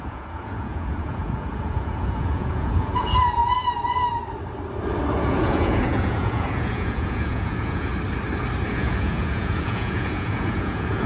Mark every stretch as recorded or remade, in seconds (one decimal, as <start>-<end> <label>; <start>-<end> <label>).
0.0-3.4 remade; 3.4-5.2 recorded; 5.2-7.9 remade; 7.9-8.7 recorded; 8.7-11.1 remade